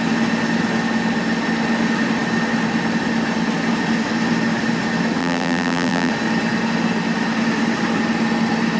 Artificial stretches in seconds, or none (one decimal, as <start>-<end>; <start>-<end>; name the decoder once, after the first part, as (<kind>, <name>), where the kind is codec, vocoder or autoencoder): 5.2-6.1 (vocoder, BigVGAN v2)